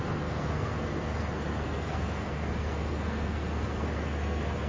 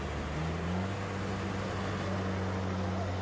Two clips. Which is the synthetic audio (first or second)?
first